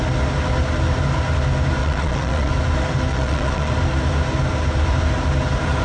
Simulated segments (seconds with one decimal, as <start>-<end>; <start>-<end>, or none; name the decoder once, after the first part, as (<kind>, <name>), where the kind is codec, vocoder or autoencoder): 1.8-2.5 (vocoder, Vocos); 3.1-3.7